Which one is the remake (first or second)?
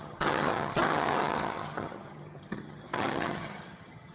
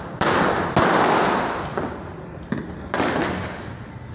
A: first